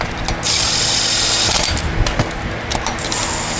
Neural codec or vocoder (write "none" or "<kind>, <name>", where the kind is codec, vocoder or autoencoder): none